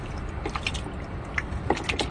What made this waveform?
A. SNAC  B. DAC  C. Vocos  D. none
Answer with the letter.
D